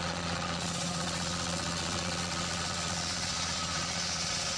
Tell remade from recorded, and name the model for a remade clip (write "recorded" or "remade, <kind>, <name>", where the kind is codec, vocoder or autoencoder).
remade, vocoder, Vocos